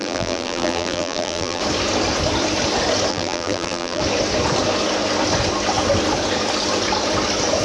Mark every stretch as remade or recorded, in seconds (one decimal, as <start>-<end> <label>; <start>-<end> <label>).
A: 0.0-1.6 remade; 1.6-3.1 recorded; 3.1-4.0 remade; 4.0-7.6 recorded